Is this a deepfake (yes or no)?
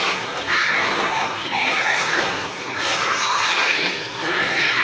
yes